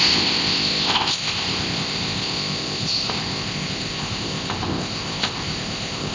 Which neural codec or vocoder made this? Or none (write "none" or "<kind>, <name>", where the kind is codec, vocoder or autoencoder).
codec, ZipCodec